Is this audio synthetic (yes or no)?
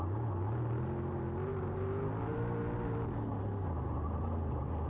no